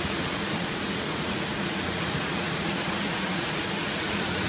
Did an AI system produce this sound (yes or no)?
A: yes